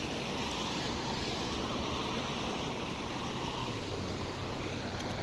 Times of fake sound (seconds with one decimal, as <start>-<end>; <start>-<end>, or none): none